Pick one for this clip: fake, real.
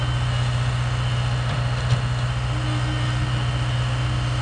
real